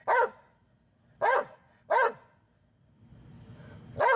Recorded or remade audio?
recorded